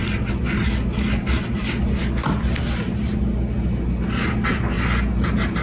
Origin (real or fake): real